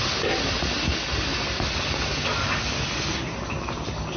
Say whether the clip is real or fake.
real